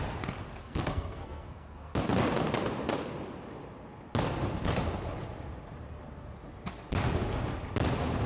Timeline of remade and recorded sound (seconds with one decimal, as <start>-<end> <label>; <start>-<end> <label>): 0.0-0.6 recorded; 0.6-2.0 remade; 2.0-8.3 recorded